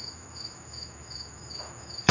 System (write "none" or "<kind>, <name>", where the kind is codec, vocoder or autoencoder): autoencoder, DAC-VAE